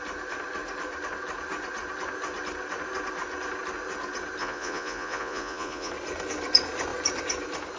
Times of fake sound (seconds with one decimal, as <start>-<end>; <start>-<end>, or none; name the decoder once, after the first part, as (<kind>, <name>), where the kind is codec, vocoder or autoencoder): 4.4-5.9 (vocoder, Vocos)